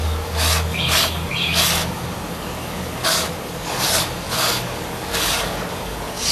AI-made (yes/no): yes